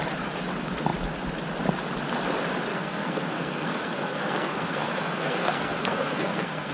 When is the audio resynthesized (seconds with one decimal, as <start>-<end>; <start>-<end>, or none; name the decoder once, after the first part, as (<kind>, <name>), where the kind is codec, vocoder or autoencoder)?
2.7-6.7 (codec, SNAC)

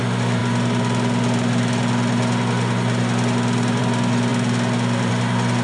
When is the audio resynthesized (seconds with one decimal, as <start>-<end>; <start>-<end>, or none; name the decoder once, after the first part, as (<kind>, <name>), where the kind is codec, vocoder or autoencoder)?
none

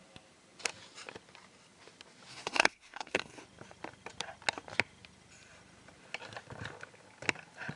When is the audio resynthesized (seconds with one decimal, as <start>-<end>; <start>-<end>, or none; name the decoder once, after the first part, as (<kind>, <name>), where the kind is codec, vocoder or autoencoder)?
2.3-3.4 (codec, SNAC)

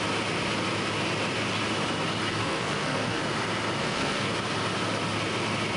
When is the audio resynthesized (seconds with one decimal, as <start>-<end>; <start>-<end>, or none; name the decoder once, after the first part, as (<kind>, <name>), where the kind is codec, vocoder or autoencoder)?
2.3-3.2 (codec, SNAC); 3.8-4.3